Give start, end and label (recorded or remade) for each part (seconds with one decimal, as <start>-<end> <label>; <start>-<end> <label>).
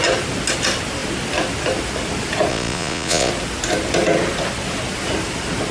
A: 0.0-2.5 recorded; 2.5-3.3 remade; 3.3-5.7 recorded